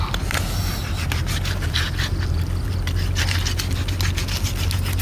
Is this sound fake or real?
real